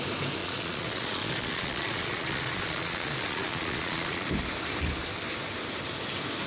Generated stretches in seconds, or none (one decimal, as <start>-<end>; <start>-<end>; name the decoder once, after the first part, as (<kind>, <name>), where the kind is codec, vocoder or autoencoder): 0.4-4.3 (vocoder, Vocos)